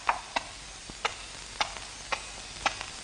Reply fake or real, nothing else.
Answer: real